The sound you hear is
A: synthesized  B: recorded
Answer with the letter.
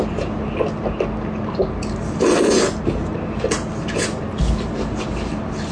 B